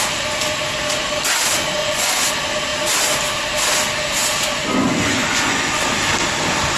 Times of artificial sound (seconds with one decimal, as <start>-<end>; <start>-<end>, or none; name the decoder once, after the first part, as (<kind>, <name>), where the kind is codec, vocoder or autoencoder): 1.8-2.3 (vocoder, Vocos); 4.5-5.8